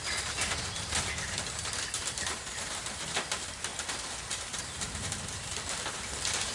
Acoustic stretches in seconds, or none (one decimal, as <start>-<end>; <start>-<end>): 0.0-2.1; 3.7-4.6

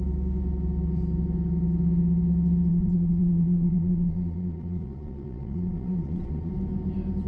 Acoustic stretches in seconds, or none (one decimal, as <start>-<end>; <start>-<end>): 0.0-2.7; 6.5-7.3

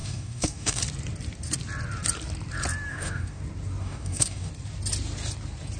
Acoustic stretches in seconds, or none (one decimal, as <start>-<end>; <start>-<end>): 0.8-2.9; 3.4-3.8; 4.5-5.8

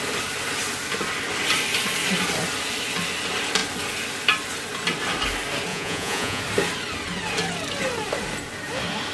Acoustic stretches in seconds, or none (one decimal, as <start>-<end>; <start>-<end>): 0.0-5.7; 6.4-9.1

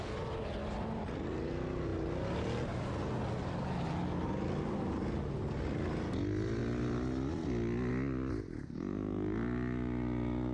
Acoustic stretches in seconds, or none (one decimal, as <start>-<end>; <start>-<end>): 0.0-10.5

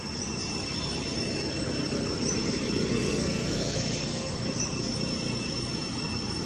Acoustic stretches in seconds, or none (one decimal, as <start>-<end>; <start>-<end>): 0.0-2.9; 4.3-6.5

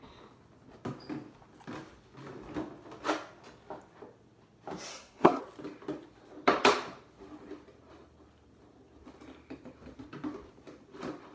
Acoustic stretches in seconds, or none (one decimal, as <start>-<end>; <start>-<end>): 0.0-4.9; 5.4-11.3

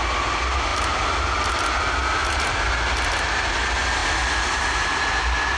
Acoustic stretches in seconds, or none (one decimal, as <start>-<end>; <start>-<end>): 0.0-5.6